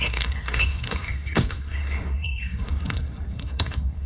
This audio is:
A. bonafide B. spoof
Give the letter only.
B